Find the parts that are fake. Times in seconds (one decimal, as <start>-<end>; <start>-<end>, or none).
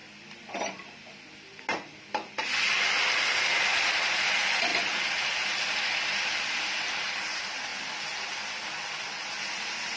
none